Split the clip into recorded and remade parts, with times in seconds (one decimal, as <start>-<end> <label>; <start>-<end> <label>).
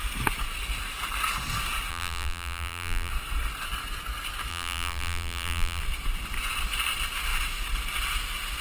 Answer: 0.0-1.9 recorded; 1.9-3.1 remade; 3.1-4.5 recorded; 4.5-5.8 remade; 5.8-8.6 recorded